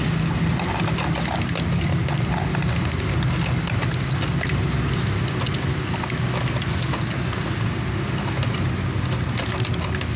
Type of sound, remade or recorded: recorded